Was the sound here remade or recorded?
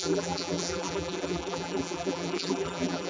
remade